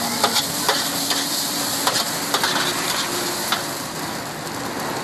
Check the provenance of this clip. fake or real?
fake